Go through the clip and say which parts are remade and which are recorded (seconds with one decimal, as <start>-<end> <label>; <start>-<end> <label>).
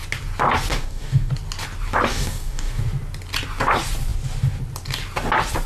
0.0-0.7 recorded; 0.7-1.3 remade; 1.3-2.1 recorded; 2.1-2.8 remade; 2.8-5.7 recorded